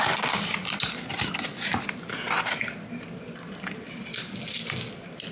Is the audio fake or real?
real